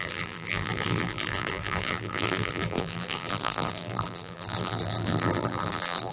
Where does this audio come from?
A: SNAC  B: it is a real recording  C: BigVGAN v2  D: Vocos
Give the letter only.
C